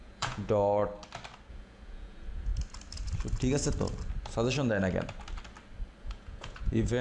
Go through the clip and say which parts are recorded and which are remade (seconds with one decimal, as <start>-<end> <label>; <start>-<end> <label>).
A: 0.0-0.8 remade; 0.8-1.5 recorded; 1.5-2.5 remade; 2.5-6.0 recorded; 6.0-7.0 remade